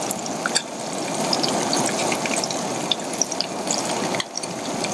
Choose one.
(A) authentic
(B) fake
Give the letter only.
A